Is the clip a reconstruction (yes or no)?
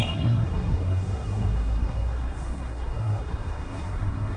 yes